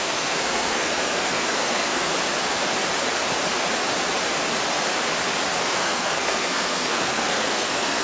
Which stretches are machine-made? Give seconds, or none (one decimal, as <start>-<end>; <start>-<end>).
0.0-2.1; 5.6-8.0